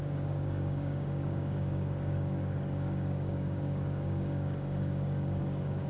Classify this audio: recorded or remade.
remade